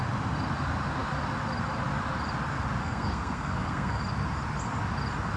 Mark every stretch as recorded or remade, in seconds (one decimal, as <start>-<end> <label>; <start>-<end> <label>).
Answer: 0.0-2.8 recorded; 2.8-4.0 remade; 4.0-5.4 recorded